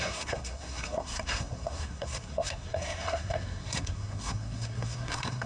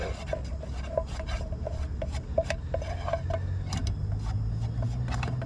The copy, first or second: first